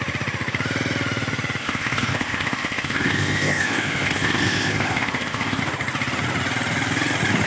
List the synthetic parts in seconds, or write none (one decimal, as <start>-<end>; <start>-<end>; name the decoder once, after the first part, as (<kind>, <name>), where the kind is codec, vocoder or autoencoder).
1.6-5.6 (codec, ZipCodec)